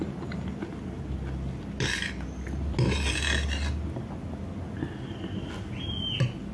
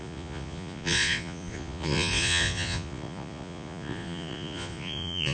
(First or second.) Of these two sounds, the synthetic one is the second